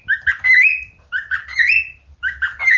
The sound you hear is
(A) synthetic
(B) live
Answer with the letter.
B